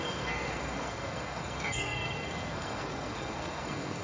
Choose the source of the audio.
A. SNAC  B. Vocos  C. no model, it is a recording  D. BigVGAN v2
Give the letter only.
A